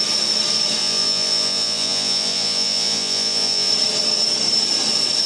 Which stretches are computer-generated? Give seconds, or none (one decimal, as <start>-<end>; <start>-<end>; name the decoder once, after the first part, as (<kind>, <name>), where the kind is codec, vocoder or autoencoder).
0.8-3.7 (vocoder, Vocos)